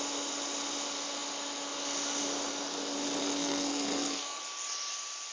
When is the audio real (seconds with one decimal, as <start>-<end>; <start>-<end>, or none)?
0.0-3.2; 4.4-5.3